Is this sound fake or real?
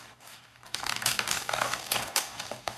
fake